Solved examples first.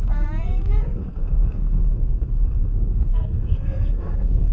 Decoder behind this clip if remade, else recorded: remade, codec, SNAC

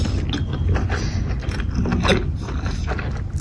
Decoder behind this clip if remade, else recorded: recorded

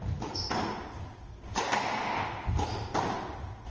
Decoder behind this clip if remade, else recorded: recorded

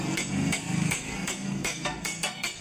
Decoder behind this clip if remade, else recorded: remade, codec, SNAC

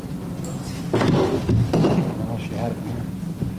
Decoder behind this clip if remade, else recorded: recorded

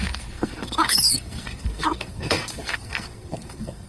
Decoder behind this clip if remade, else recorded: remade, codec, SNAC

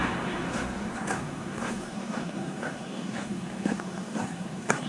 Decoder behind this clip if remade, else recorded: remade, codec, SNAC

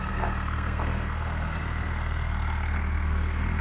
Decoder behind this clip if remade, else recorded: remade, codec, SNAC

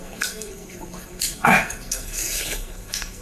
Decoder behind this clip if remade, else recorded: remade, codec, SNAC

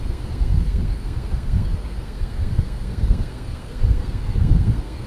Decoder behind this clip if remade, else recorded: remade, codec, SNAC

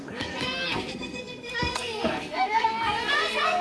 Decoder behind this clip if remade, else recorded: remade, codec, SNAC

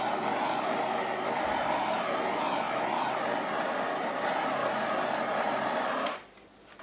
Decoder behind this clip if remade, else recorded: recorded